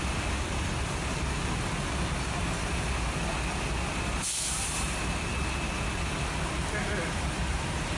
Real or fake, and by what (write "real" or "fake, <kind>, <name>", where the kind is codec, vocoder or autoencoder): real